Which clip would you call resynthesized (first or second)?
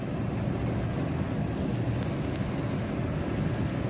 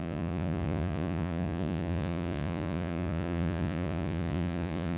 second